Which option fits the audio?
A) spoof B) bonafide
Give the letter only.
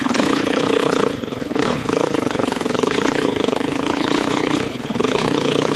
A